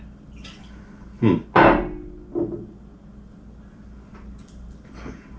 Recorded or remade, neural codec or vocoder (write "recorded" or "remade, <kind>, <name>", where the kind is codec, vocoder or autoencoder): recorded